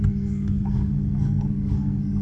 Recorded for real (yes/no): no